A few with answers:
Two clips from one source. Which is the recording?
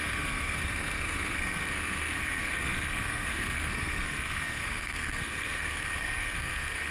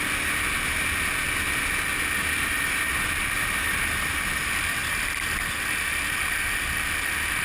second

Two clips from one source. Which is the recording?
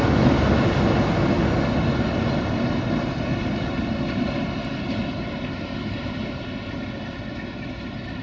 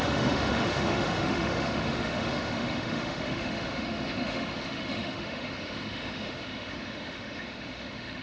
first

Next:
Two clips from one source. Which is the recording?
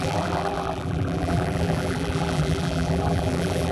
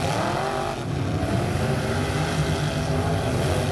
second